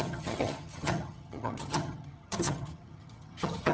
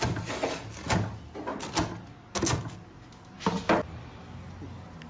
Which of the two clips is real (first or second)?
second